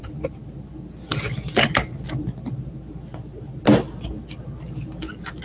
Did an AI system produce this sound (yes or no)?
no